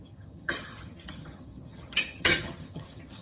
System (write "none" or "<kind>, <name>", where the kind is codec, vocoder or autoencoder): vocoder, HiFi-GAN